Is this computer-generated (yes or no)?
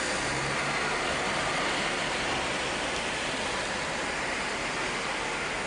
no